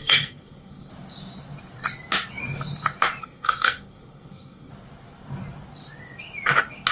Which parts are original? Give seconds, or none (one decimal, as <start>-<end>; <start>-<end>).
0.9-3.2; 4.7-6.9